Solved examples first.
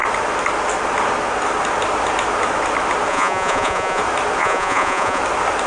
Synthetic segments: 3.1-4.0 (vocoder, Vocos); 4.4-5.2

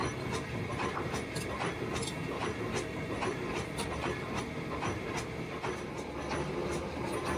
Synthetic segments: 0.0-4.4 (vocoder, BigVGAN v2)

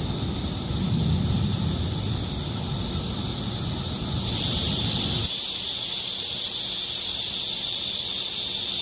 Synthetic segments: none

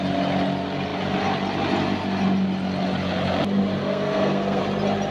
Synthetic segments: 3.8-4.6 (codec, SNAC)

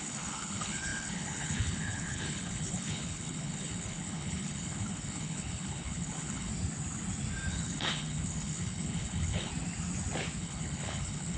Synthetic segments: 0.0-6.5 (codec, HILCodec); 7.5-9.5; 10.4-11.4